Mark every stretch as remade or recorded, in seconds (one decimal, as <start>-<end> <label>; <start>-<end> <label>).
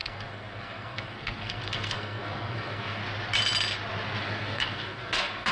0.0-3.0 remade; 3.0-4.2 recorded; 4.2-5.5 remade